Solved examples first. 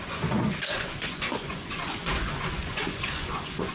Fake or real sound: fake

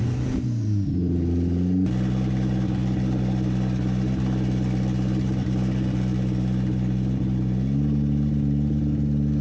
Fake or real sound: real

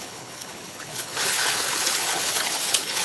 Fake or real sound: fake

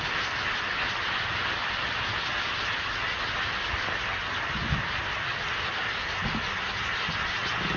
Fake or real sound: real